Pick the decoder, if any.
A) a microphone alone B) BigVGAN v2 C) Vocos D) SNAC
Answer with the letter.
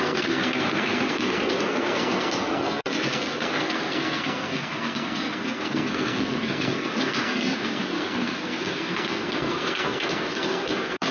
D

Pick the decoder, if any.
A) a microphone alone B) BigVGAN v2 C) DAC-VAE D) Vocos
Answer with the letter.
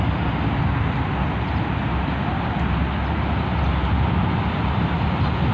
A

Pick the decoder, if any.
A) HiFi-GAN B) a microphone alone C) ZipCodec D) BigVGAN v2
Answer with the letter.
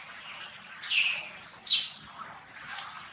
B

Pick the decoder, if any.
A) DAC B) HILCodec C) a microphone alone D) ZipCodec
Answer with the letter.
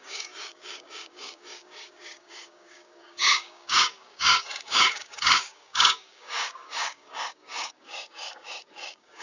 A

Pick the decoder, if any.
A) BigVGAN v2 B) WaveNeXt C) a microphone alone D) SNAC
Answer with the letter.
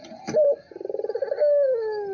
C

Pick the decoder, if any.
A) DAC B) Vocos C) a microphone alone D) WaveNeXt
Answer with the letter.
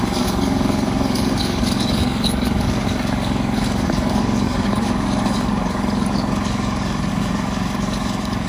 A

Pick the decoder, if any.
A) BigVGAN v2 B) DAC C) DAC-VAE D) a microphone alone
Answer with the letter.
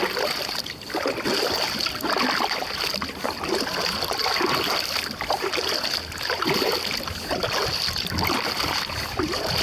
D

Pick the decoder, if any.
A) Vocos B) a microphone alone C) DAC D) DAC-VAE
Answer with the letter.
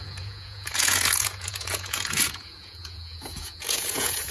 A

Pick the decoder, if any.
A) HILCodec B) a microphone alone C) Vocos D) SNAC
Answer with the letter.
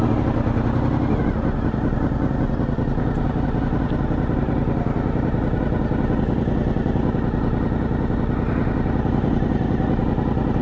B